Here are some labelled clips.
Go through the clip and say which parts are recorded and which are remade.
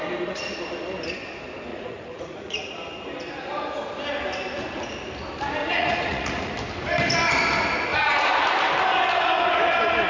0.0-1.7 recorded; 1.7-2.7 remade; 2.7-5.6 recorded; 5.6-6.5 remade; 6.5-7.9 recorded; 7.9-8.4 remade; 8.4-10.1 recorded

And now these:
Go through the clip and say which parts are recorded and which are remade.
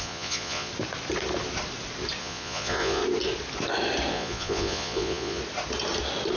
0.0-0.7 remade; 0.7-2.2 recorded; 2.2-3.0 remade; 3.0-4.1 recorded; 4.1-5.4 remade; 5.4-6.4 recorded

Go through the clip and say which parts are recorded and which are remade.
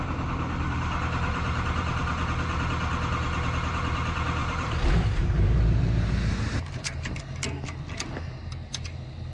0.0-1.3 recorded; 1.3-2.0 remade; 2.0-4.4 recorded; 4.4-7.2 remade; 7.2-9.3 recorded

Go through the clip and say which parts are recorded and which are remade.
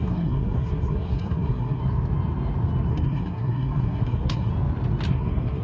0.0-1.8 remade; 1.8-2.9 recorded; 2.9-4.5 remade; 4.5-5.1 recorded; 5.1-5.6 remade